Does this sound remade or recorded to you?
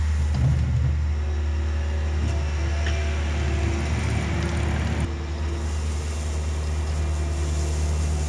recorded